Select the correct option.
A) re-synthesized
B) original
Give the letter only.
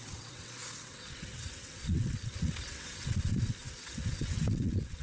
A